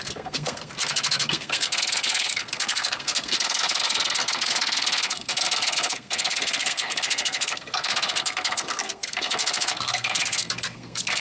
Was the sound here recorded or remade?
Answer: remade